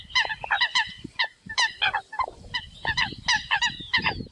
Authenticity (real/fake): real